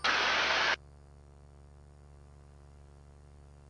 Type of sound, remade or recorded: recorded